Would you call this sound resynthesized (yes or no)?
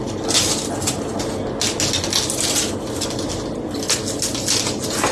no